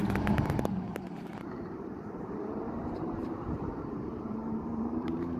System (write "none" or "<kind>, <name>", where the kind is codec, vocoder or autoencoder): vocoder, BigVGAN v2